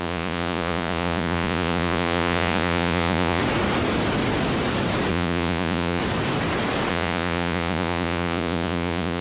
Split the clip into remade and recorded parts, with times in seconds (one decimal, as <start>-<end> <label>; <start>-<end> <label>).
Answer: 0.0-3.4 remade; 3.4-5.1 recorded; 5.1-6.0 remade; 6.0-6.9 recorded; 6.9-9.2 remade